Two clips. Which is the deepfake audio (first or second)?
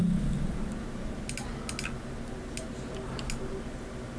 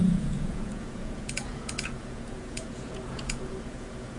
second